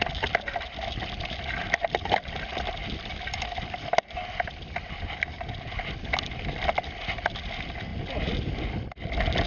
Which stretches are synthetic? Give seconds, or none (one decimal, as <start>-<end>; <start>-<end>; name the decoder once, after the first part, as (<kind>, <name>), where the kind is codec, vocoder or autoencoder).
none

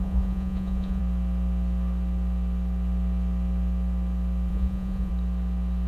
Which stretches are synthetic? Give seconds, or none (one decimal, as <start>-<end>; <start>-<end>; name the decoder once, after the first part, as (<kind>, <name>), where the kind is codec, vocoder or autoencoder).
0.0-1.0 (vocoder, Vocos); 4.5-5.1